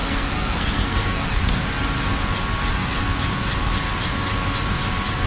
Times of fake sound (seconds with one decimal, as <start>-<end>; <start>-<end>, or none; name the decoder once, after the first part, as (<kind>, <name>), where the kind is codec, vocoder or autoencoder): 0.0-1.6 (codec, SNAC)